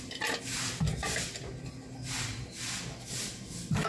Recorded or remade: recorded